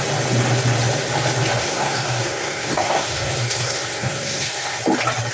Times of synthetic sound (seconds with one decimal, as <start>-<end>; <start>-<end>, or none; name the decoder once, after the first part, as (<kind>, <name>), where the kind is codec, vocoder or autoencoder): 1.6-4.8 (codec, SNAC)